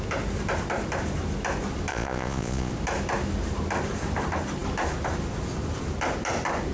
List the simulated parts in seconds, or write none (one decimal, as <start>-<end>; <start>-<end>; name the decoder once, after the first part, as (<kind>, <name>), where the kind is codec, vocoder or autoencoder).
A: 1.9-2.7 (vocoder, Vocos)